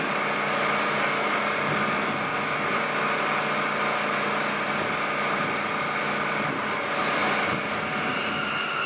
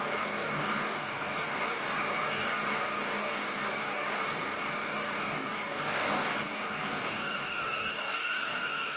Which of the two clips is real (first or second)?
first